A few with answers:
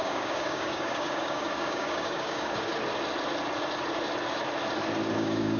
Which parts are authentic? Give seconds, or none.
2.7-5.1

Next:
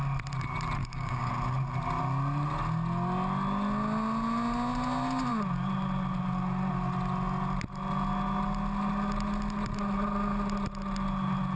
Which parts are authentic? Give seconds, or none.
0.0-0.8; 1.3-11.6

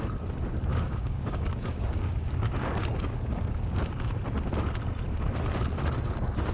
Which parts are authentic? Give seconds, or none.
0.0-0.7; 3.8-6.5